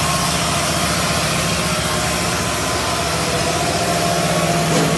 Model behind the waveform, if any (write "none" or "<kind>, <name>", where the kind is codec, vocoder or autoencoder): none